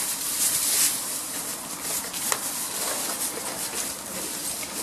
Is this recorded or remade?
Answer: recorded